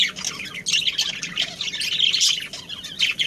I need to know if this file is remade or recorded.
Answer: recorded